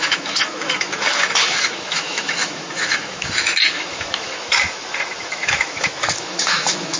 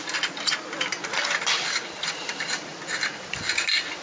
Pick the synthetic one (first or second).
first